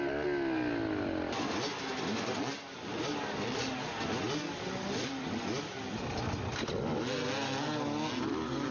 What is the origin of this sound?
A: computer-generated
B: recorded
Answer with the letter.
B